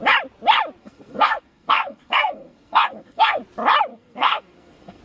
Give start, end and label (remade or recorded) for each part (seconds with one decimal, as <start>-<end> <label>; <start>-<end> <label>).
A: 0.0-0.8 recorded; 0.8-3.4 remade; 3.4-3.9 recorded; 3.9-5.0 remade